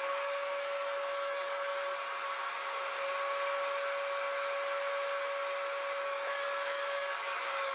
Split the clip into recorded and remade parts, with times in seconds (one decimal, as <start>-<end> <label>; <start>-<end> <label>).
0.0-1.7 remade; 1.7-6.0 recorded; 6.0-7.7 remade